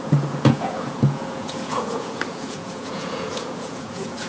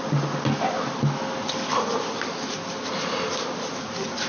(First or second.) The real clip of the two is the second